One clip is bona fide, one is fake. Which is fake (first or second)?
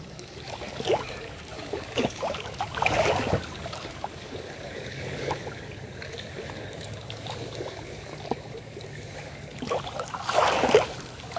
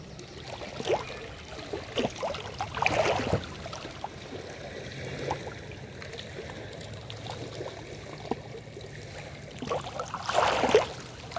first